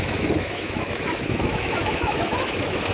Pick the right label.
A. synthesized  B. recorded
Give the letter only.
A